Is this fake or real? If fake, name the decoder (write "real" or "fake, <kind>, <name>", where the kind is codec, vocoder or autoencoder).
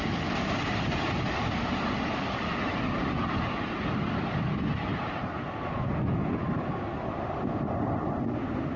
real